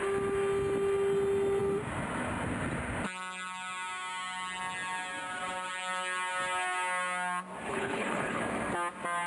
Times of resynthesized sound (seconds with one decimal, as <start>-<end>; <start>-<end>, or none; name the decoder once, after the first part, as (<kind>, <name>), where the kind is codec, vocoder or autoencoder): 7.7-8.4 (codec, HILCodec)